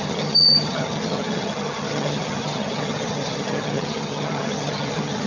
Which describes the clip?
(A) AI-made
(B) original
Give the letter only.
A